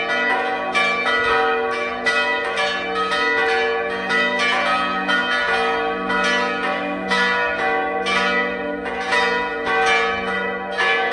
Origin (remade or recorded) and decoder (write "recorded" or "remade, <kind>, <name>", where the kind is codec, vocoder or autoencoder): recorded